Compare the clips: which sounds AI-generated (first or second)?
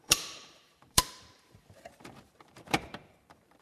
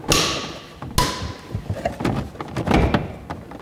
first